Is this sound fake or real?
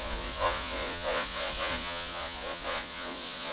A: fake